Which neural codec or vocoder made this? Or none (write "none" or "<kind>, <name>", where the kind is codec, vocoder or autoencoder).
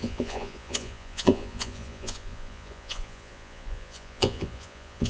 vocoder, Vocos